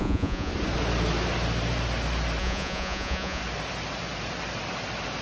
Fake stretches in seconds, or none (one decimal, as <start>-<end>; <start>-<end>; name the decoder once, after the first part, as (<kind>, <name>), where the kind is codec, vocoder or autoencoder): 0.0-0.5 (vocoder, Vocos); 2.4-3.4